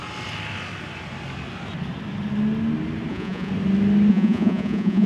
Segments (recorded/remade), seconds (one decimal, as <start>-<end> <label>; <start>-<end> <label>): 0.0-3.1 recorded; 3.1-3.5 remade; 3.5-4.1 recorded; 4.1-5.1 remade